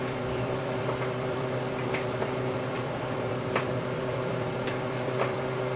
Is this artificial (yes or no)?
yes